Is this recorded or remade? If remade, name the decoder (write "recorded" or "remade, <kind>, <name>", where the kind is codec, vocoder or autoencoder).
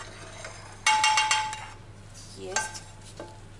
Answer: recorded